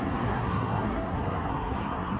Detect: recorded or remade remade